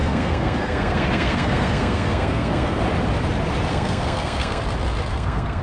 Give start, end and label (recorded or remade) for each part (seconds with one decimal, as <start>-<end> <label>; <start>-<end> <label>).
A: 0.0-2.8 remade; 2.8-3.7 recorded; 3.7-4.6 remade; 4.6-5.1 recorded; 5.1-5.6 remade